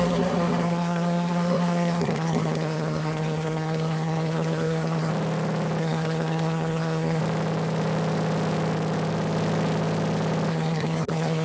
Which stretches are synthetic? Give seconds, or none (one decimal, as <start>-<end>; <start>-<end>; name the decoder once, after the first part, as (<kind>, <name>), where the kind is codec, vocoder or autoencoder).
0.0-5.1 (codec, SNAC); 5.8-7.2; 10.5-11.4